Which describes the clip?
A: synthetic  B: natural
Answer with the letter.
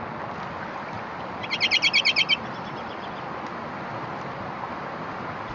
B